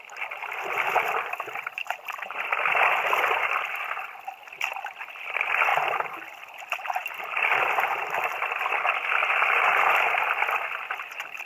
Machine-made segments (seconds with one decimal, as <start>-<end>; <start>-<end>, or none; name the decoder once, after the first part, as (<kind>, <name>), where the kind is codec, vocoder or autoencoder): 1.8-3.6 (vocoder, BigVGAN v2); 7.0-8.6; 9.2-10.6